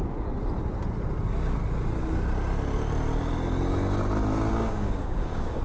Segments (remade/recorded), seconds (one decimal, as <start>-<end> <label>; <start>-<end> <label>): 0.0-4.5 recorded; 4.5-5.6 remade